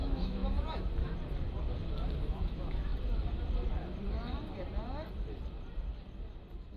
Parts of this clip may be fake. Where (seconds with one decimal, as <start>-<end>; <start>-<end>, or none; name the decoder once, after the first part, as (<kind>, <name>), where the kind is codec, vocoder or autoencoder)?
0.0-0.4 (autoencoder, DAC-VAE); 2.3-2.9